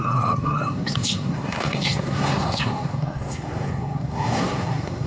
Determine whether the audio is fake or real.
fake